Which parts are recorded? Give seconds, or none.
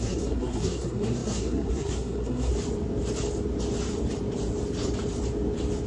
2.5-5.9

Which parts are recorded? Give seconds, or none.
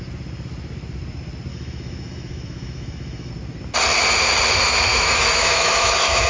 0.0-1.5; 3.3-4.9